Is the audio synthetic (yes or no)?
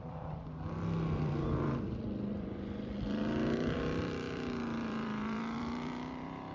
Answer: yes